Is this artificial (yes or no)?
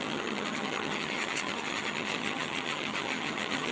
yes